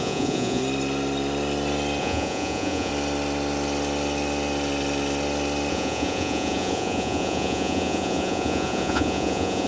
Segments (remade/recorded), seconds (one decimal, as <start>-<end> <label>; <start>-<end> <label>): 0.0-0.6 remade; 0.6-2.0 recorded; 2.0-2.9 remade; 2.9-5.7 recorded; 5.7-9.7 remade